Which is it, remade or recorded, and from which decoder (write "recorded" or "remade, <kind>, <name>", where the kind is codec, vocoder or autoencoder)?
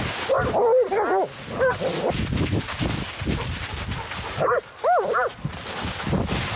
recorded